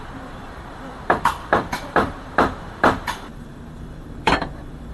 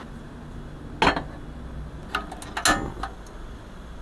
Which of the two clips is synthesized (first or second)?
first